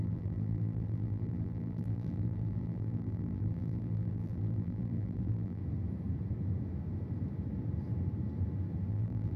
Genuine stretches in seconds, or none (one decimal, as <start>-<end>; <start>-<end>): 5.6-8.9

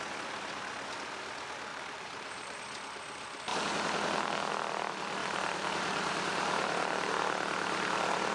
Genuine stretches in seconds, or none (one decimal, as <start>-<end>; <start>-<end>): 0.0-1.7; 2.6-5.2; 7.1-8.3

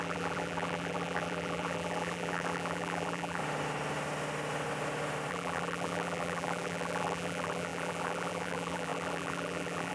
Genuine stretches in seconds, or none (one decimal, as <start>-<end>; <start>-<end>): 3.4-5.3

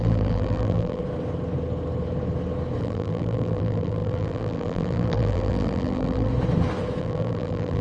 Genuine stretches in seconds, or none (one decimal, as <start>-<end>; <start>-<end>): 1.0-2.8; 6.3-7.0